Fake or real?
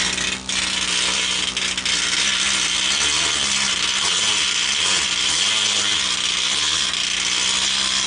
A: real